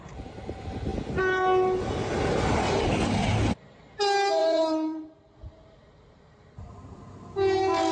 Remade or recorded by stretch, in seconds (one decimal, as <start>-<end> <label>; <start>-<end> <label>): 0.0-4.4 recorded; 4.4-6.2 remade; 6.2-7.9 recorded